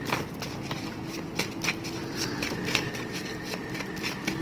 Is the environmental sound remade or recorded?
recorded